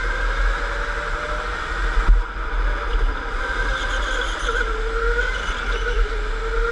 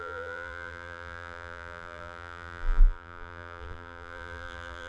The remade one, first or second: second